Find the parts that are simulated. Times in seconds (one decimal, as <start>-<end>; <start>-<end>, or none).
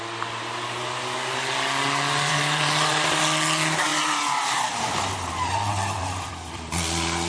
2.3-3.2; 3.9-6.3